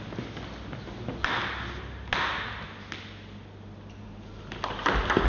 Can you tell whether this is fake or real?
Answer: real